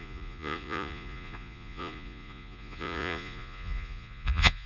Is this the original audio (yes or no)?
no